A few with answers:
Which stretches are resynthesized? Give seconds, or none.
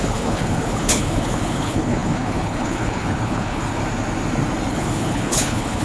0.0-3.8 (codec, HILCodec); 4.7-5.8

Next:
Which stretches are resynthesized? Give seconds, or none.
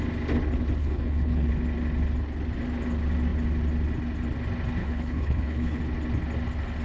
0.8-1.5 (codec, HILCodec); 4.8-5.8